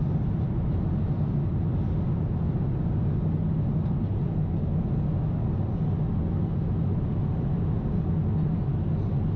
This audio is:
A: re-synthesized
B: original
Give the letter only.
B